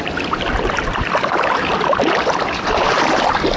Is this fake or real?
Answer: real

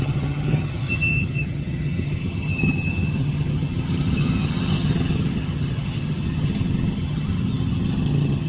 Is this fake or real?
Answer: fake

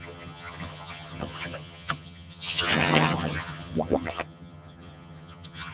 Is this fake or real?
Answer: fake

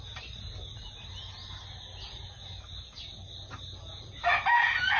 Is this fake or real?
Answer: real